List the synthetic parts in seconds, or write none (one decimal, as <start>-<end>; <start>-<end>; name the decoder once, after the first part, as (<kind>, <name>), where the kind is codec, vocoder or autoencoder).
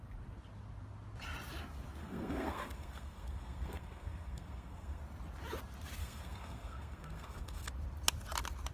2.0-5.0 (codec, SNAC); 6.0-7.7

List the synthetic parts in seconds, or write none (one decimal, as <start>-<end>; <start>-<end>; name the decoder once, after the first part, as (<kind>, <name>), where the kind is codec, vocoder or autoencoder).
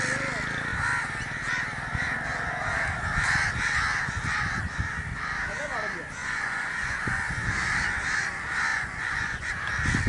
6.2-7.2 (vocoder, Vocos); 8.7-9.5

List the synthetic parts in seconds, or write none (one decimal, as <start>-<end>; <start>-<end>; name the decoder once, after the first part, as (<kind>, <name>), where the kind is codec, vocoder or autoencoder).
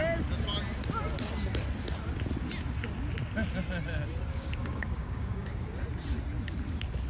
4.3-5.8 (codec, DAC)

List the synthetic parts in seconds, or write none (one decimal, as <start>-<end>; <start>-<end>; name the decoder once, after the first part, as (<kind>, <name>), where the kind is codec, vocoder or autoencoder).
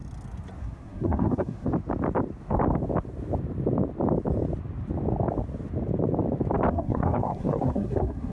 0.6-1.7 (codec, SNAC); 6.7-8.3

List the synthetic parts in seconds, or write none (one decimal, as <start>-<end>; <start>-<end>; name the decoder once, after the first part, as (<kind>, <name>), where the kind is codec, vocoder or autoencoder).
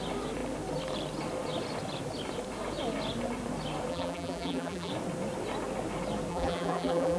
3.9-4.9 (vocoder, BigVGAN v2); 6.3-7.2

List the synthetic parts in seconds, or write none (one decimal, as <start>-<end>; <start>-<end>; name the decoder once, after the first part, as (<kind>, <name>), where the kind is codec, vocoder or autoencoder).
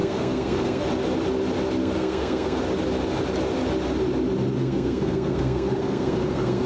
0.0-0.8 (codec, SNAC); 1.8-2.6; 4.6-6.7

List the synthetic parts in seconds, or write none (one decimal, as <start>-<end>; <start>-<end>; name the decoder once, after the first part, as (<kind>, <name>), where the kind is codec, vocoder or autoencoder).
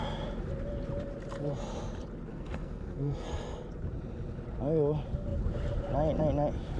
2.3-3.3 (codec, SNAC)